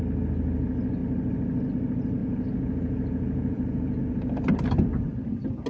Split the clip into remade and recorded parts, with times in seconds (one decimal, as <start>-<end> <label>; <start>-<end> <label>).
0.0-2.2 recorded; 2.2-4.0 remade; 4.0-5.7 recorded